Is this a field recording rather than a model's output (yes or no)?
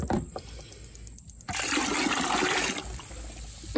yes